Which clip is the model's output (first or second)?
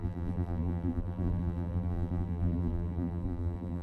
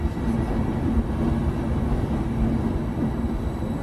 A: first